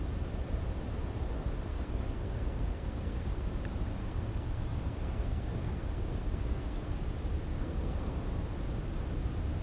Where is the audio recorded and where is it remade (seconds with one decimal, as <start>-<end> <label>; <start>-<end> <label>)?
0.0-1.7 recorded; 1.7-3.5 remade; 3.5-4.0 recorded; 4.0-7.1 remade; 7.1-7.6 recorded; 7.6-8.2 remade; 8.2-9.6 recorded